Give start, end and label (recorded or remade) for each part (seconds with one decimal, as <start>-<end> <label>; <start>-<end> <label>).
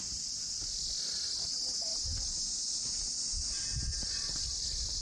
0.0-5.0 recorded